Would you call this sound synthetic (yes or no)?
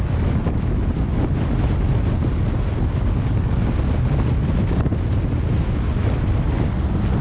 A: no